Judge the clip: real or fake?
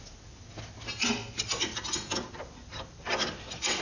real